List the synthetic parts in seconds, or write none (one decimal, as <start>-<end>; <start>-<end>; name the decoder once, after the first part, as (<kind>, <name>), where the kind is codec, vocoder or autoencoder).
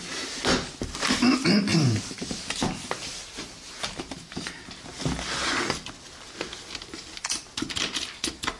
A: 1.7-4.5 (vocoder, BigVGAN v2)